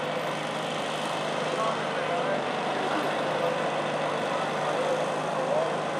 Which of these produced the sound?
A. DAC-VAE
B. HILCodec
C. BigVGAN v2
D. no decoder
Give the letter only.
D